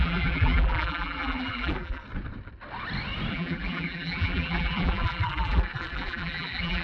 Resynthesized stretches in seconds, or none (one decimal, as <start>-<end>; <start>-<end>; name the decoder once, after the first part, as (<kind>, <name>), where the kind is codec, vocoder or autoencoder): 0.0-2.0 (vocoder, BigVGAN v2); 3.3-6.8